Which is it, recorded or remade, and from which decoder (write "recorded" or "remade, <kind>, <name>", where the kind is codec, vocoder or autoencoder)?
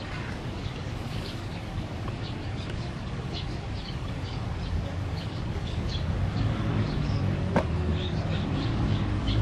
remade, codec, DAC